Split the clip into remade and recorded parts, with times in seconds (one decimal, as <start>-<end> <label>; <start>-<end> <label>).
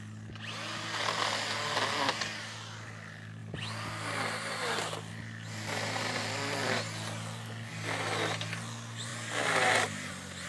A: 0.0-10.5 recorded